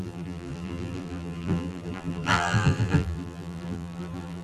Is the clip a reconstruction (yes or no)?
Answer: yes